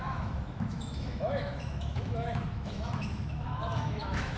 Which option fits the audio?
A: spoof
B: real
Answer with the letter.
A